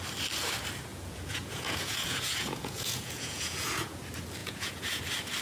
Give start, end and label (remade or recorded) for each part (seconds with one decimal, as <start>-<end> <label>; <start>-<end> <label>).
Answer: 0.0-0.9 recorded; 0.9-4.0 remade; 4.0-4.4 recorded; 4.4-5.0 remade; 5.0-5.4 recorded